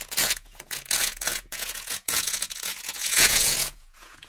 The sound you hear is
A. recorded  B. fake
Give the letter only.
B